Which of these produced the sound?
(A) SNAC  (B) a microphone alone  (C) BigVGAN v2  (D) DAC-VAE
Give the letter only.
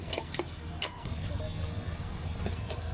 A